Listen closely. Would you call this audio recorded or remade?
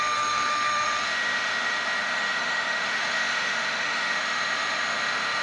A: remade